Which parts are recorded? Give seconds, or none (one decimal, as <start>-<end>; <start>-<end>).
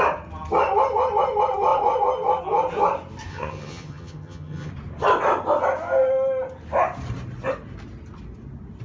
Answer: 0.0-3.3; 4.7-8.8